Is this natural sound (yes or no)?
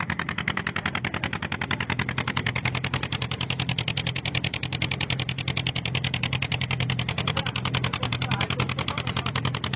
no